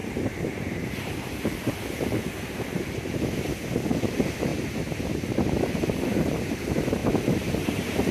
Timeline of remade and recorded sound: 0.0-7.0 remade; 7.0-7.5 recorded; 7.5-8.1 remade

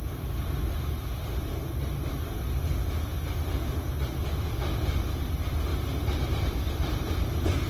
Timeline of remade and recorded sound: 0.0-5.7 recorded; 5.7-7.7 remade

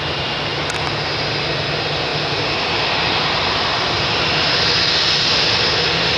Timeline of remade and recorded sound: 0.0-6.2 recorded

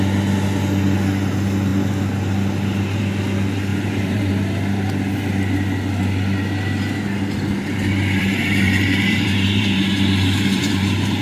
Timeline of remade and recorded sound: 0.0-3.7 recorded; 3.7-4.3 remade; 4.3-8.2 recorded; 8.2-11.2 remade

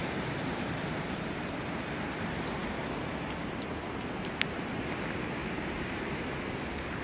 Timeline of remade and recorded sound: 0.0-2.0 remade; 2.0-2.6 recorded; 2.6-4.8 remade; 4.8-5.4 recorded; 5.4-7.0 remade

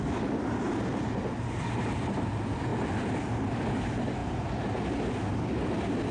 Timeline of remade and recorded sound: 0.0-2.7 recorded; 2.7-3.7 remade; 3.7-4.2 recorded; 4.2-6.1 remade